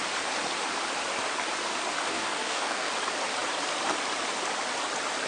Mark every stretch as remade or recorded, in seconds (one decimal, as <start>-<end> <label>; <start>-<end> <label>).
0.0-2.0 recorded; 2.0-2.9 remade; 2.9-5.3 recorded